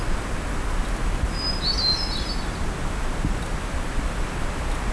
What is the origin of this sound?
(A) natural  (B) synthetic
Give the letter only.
A